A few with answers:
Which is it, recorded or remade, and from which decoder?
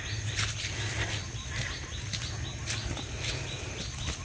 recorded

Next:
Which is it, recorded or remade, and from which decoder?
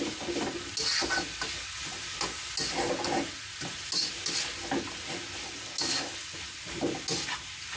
recorded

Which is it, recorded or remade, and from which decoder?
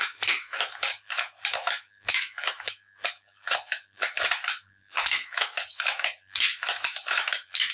remade, autoencoder, DAC-VAE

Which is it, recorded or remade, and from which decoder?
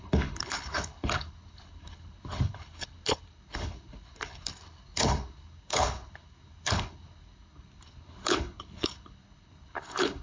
remade, codec, HILCodec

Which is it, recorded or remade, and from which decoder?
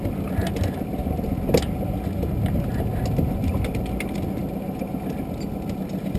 recorded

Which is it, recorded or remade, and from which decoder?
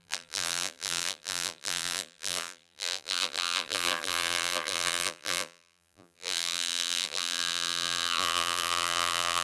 remade, vocoder, BigVGAN v2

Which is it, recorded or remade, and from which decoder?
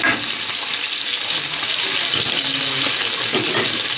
recorded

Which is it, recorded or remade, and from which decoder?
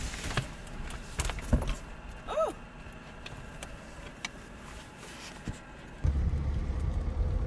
recorded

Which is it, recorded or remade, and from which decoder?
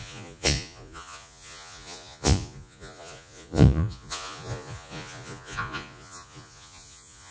remade, vocoder, Vocos